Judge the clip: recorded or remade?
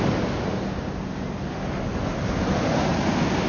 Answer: recorded